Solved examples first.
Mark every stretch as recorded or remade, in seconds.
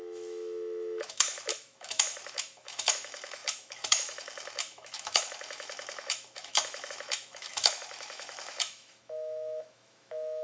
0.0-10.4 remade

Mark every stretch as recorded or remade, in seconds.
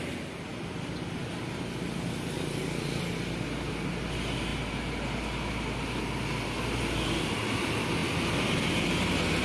0.0-9.4 recorded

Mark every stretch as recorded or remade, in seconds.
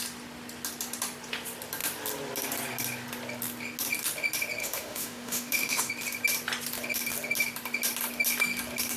0.0-4.6 recorded; 4.6-5.9 remade; 5.9-9.0 recorded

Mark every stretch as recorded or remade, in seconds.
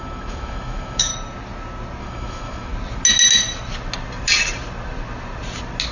0.0-1.1 remade; 1.1-2.0 recorded; 2.0-2.7 remade; 2.7-5.9 recorded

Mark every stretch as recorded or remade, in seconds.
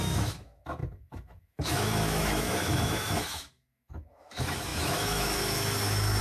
0.0-6.2 remade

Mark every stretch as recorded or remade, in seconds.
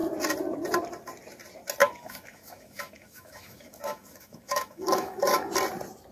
0.0-1.8 recorded; 1.8-5.5 remade; 5.5-6.1 recorded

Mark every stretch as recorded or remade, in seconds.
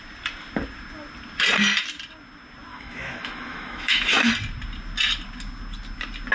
0.0-2.7 recorded; 2.7-4.3 remade; 4.3-6.3 recorded